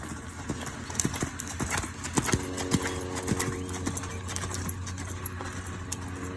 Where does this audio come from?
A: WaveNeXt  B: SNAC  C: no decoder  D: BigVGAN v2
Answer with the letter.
C